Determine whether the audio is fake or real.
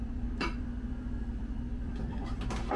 fake